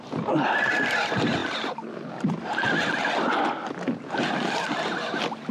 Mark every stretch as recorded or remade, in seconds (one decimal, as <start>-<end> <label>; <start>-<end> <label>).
0.0-5.5 recorded